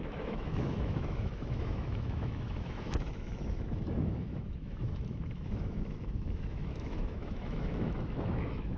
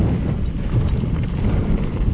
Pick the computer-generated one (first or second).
first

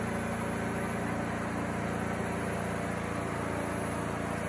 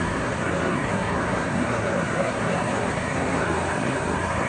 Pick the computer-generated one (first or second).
second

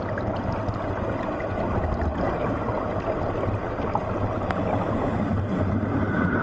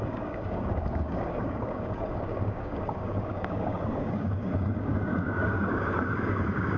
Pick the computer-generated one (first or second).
second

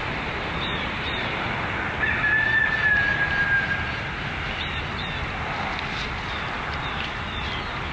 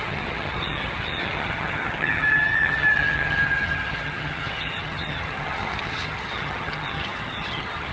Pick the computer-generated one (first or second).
second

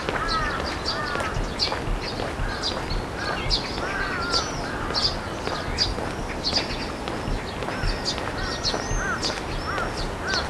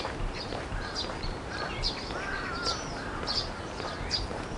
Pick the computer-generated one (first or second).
second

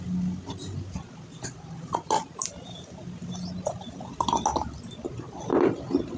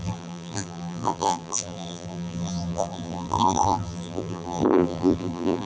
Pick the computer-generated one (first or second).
second